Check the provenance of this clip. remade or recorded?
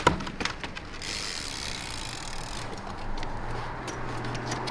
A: recorded